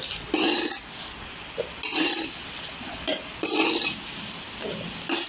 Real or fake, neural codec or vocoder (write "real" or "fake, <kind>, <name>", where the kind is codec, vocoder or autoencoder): real